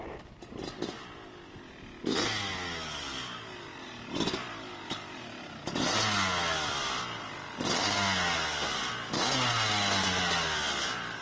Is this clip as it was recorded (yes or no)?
yes